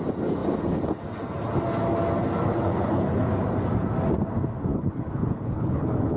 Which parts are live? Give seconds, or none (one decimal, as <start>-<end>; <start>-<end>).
0.0-2.5; 3.3-4.7